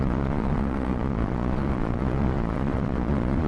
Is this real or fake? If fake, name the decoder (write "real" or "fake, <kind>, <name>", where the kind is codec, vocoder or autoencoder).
fake, vocoder, Vocos